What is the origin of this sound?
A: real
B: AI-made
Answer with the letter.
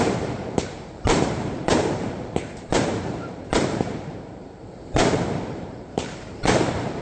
B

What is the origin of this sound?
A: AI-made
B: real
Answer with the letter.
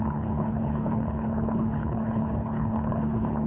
A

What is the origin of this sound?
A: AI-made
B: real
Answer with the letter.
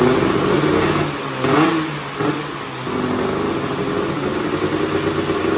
B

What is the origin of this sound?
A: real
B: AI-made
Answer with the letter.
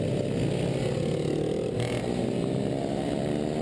A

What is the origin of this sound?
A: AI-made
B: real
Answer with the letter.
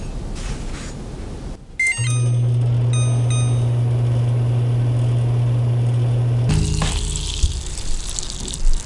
B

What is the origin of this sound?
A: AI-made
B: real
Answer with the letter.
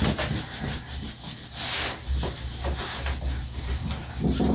B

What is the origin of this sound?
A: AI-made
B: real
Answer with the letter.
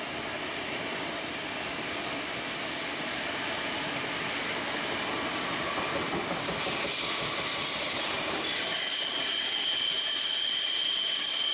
B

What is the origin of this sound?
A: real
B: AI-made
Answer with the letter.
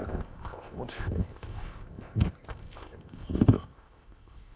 B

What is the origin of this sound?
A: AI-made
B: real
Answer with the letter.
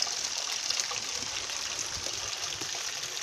B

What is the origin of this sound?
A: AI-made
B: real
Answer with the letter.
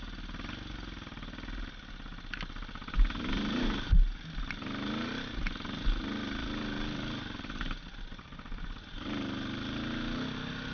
B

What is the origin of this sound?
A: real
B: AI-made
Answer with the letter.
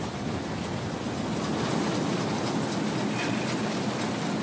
A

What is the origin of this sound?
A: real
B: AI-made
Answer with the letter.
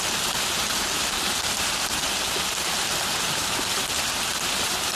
A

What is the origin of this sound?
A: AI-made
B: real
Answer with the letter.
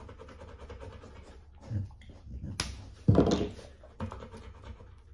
B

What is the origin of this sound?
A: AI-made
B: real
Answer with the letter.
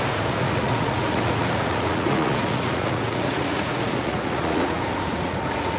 A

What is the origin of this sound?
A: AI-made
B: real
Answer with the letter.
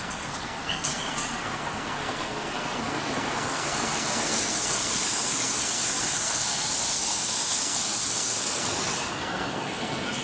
A